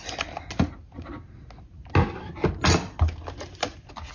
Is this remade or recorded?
recorded